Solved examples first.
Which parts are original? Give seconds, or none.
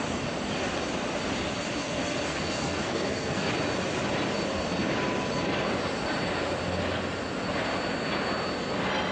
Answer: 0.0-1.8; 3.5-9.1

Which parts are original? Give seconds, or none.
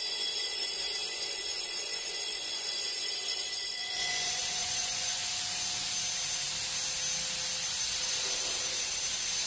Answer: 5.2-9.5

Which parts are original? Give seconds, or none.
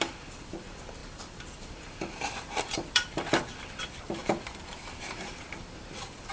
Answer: none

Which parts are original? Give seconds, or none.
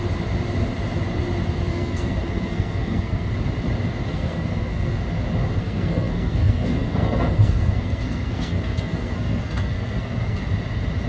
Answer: 0.0-1.7; 3.3-4.1; 5.0-5.6; 10.5-11.1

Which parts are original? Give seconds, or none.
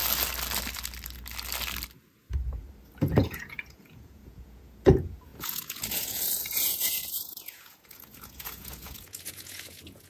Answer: 0.0-3.0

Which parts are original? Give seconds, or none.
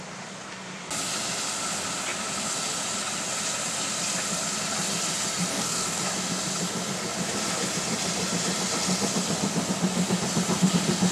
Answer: 0.0-5.5; 6.0-11.1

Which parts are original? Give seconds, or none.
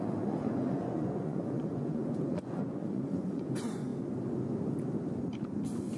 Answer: 3.9-6.0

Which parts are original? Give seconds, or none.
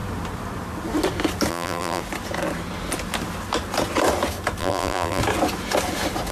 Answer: 0.0-1.5; 2.0-4.6; 5.2-6.3